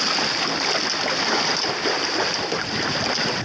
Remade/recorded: recorded